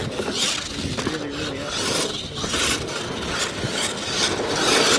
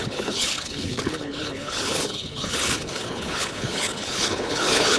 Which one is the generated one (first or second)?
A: second